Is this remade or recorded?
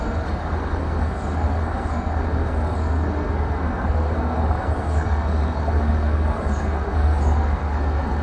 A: remade